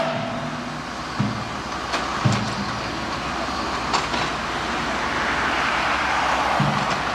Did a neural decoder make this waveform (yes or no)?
no